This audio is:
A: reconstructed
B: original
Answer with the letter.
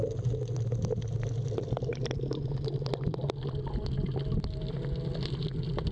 B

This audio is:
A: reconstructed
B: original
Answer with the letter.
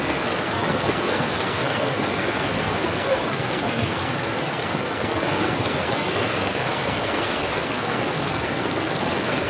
A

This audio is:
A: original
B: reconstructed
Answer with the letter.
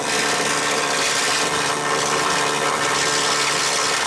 A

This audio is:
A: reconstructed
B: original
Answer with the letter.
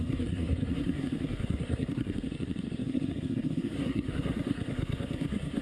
A